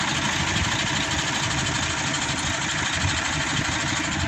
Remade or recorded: recorded